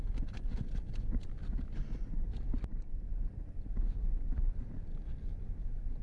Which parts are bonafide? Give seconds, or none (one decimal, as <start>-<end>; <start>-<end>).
0.0-6.0